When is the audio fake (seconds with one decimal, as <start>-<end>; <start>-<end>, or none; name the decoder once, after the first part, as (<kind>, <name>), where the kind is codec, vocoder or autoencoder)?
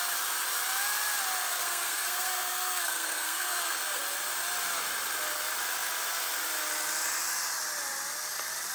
1.4-4.0 (codec, SNAC)